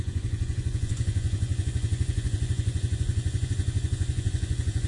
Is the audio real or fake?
fake